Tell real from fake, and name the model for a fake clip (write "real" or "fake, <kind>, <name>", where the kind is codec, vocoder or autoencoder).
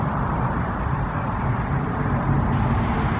fake, vocoder, BigVGAN v2